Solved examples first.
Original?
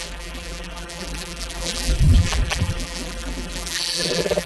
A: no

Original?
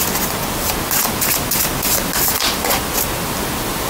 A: yes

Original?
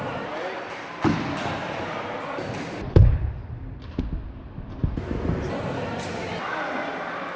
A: yes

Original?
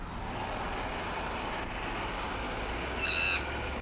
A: yes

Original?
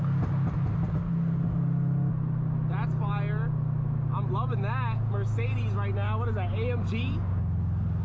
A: yes